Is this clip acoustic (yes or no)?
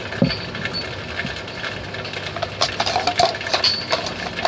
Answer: yes